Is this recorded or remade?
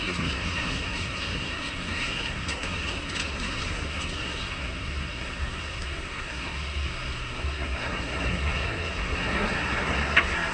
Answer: remade